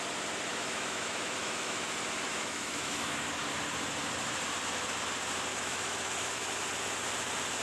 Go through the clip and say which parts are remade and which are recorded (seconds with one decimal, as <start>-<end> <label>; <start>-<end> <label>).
0.0-0.5 recorded; 0.5-1.9 remade; 1.9-2.3 recorded; 2.3-3.2 remade; 3.2-5.5 recorded; 5.5-6.5 remade; 6.5-7.6 recorded